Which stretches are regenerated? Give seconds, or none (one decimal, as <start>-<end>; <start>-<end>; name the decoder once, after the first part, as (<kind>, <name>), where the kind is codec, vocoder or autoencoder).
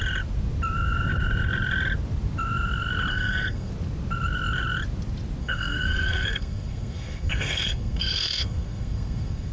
3.1-3.7 (codec, SNAC); 5.4-9.5